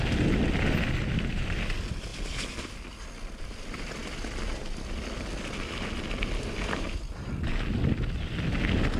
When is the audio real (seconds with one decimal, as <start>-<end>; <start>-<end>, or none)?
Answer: 0.0-9.0